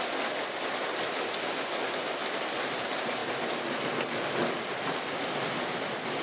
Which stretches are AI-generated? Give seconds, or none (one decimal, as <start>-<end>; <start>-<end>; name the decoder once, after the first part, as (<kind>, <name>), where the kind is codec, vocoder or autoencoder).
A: 2.2-2.8 (vocoder, BigVGAN v2)